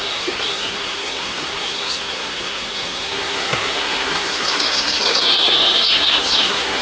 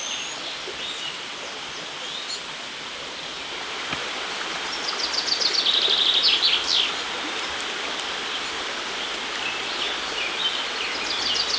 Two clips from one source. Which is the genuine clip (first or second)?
second